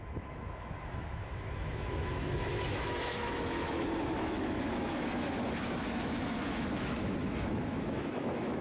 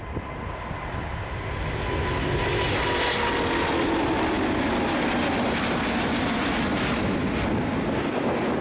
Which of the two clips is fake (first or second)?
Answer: first